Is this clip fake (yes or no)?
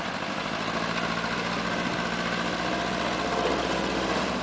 no